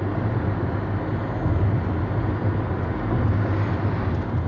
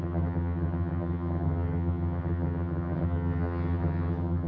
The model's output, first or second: second